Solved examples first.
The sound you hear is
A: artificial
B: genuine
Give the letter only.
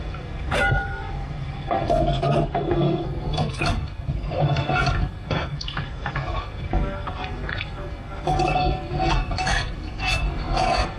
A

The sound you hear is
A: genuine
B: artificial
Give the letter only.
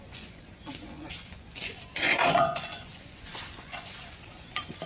B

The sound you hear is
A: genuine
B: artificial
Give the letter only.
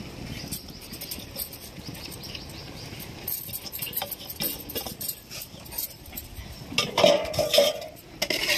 A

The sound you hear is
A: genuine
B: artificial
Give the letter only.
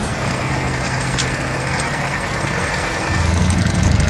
B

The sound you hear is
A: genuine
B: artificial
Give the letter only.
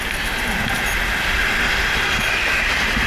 A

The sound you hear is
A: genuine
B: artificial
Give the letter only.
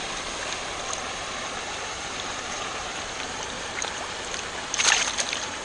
B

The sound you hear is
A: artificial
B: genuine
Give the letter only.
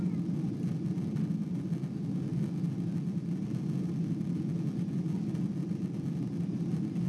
B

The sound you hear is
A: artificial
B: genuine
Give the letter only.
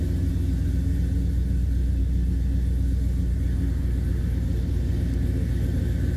B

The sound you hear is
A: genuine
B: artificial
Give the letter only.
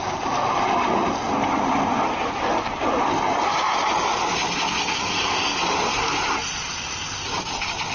A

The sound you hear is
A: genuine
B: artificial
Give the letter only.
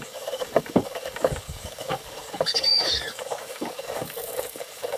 B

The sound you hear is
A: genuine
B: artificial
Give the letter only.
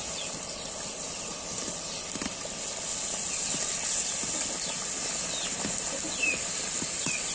A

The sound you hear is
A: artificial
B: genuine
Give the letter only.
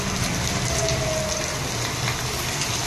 B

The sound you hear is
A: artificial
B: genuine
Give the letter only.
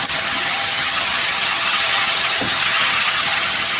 A